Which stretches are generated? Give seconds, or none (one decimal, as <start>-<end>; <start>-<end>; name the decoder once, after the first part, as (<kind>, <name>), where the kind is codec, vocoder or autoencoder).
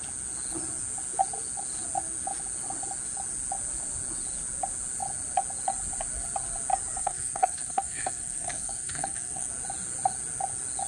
7.0-9.5 (codec, SNAC)